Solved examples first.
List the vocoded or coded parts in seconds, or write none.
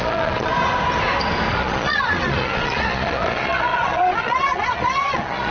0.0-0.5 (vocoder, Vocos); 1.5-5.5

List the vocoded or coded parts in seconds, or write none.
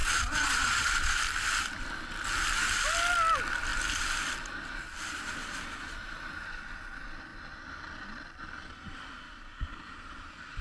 0.0-1.2 (vocoder, Vocos)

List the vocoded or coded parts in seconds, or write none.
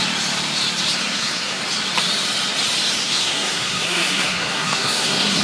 1.0-1.6 (codec, SNAC); 3.0-5.4